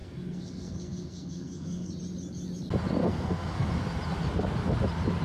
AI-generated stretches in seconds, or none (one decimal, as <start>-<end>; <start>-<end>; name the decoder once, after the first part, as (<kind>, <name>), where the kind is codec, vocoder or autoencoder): 0.0-1.9 (codec, SNAC); 3.0-3.7